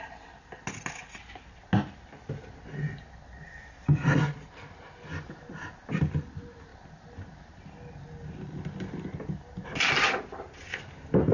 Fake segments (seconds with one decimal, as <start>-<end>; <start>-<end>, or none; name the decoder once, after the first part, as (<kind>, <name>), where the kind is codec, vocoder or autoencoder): none

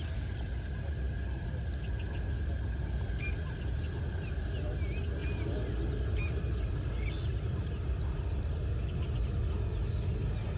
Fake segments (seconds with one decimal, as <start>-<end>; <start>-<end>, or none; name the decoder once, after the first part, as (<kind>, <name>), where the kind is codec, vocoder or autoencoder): none

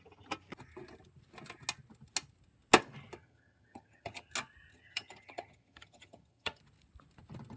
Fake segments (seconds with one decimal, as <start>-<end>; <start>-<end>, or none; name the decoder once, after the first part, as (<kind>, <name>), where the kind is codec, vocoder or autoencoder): 3.2-4.3 (vocoder, HiFi-GAN); 4.7-6.6